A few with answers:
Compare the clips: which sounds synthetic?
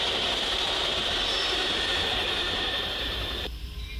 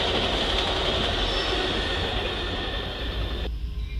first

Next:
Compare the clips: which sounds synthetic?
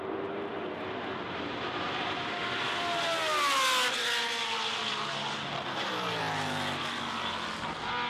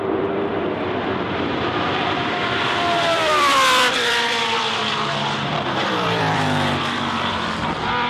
second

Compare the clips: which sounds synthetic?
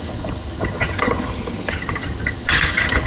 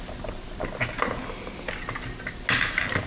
first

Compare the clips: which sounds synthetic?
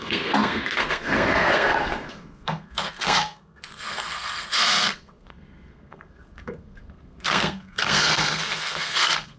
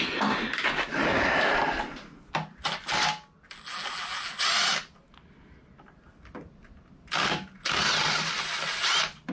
first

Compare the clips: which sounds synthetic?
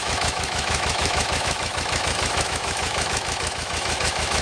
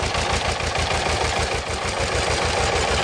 first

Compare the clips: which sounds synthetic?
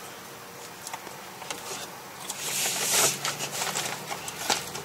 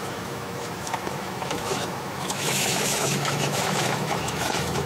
second